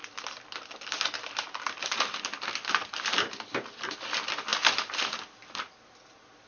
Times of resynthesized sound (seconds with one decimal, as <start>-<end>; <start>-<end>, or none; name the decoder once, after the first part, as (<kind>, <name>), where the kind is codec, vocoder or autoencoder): none